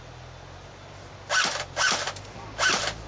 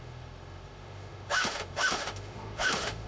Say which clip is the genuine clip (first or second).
first